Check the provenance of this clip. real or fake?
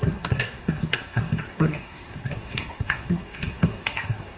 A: fake